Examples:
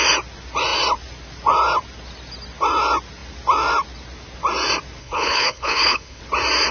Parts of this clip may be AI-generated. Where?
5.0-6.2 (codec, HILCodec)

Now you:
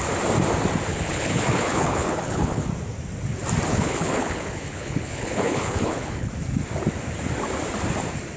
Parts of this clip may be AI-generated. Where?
0.9-2.7 (codec, HILCodec); 3.7-6.3